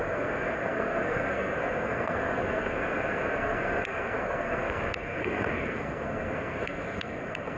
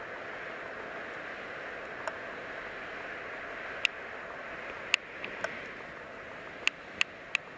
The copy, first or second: first